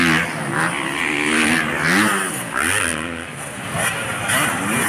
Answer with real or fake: real